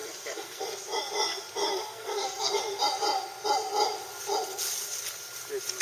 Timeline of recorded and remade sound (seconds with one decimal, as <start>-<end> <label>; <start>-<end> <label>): 0.0-0.6 remade; 0.6-1.7 recorded; 1.7-2.5 remade; 2.5-5.8 recorded